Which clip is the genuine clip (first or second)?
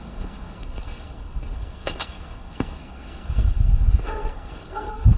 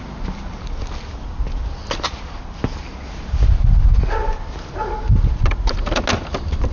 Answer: second